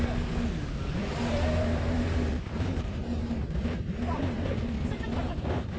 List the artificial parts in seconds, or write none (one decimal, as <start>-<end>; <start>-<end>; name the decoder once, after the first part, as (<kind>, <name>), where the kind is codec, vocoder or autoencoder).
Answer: 1.0-3.8 (vocoder, BigVGAN v2)